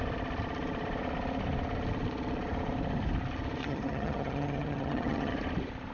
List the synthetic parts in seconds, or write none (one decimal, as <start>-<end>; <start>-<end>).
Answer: 3.6-5.3